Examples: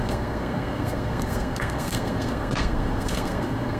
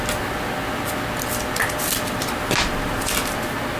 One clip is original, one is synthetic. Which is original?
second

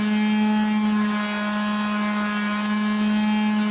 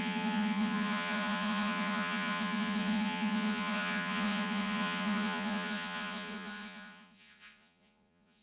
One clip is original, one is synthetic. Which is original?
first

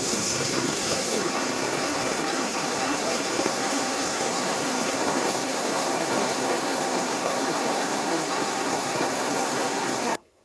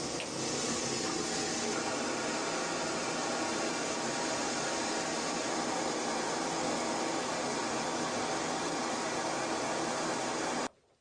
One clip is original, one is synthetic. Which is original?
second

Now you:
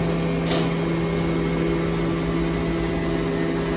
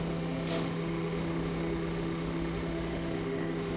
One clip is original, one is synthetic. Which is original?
first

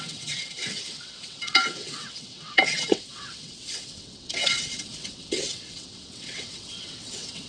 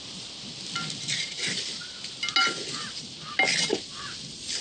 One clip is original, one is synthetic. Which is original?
second